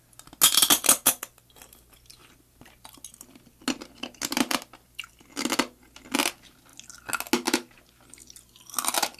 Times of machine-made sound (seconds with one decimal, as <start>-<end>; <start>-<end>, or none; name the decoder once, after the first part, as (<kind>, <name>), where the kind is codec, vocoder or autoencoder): none